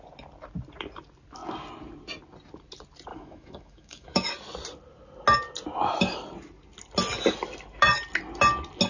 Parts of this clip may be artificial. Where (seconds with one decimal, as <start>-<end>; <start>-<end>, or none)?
3.1-4.3